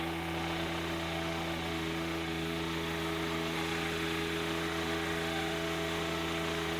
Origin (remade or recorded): remade